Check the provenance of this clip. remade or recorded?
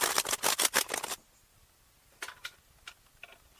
recorded